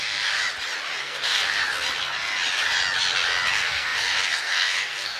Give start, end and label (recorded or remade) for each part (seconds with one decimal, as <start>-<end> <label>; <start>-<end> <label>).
0.0-0.4 remade; 0.4-1.0 recorded; 1.0-1.6 remade; 1.6-3.5 recorded; 3.5-5.2 remade